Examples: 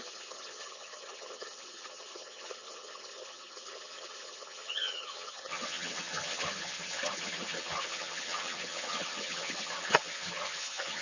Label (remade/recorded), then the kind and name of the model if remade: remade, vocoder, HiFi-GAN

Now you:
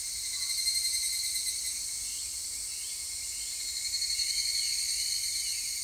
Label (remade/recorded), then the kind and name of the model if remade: recorded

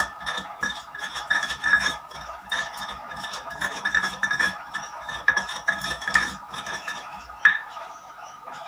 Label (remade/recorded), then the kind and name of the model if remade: remade, autoencoder, DAC-VAE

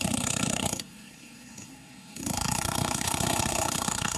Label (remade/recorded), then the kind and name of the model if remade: remade, codec, SNAC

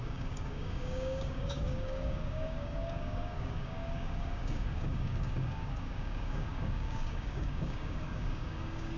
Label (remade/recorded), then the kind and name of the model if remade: remade, codec, DAC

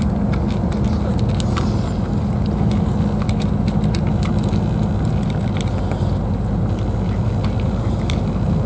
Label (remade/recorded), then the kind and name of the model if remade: recorded